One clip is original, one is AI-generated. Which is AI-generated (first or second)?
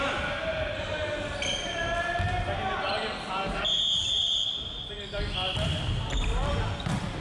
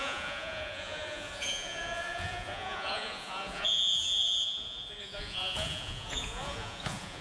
second